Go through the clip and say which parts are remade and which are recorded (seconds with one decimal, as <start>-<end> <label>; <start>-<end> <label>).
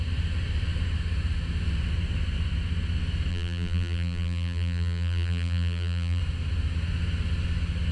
0.0-3.3 recorded; 3.3-6.2 remade; 6.2-7.9 recorded